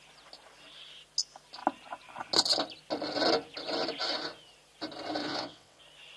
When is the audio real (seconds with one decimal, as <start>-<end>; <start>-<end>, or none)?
0.0-5.2; 5.8-6.2